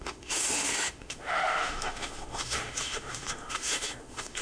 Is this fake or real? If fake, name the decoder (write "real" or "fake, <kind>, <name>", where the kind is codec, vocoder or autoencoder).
fake, autoencoder, DAC-VAE